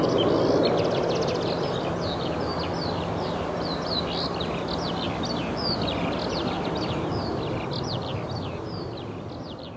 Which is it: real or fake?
real